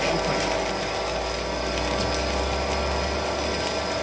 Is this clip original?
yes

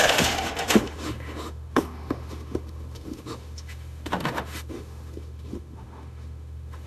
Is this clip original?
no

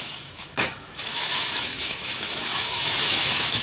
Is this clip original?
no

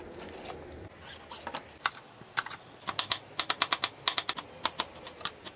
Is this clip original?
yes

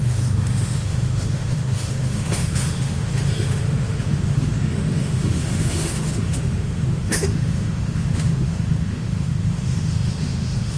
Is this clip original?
no